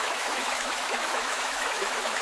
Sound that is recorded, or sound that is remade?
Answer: remade